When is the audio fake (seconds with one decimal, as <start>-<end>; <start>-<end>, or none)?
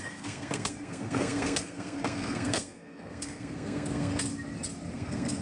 0.0-4.3; 4.9-5.4